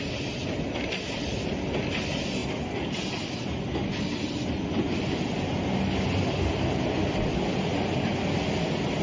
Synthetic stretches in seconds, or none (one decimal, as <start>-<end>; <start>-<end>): none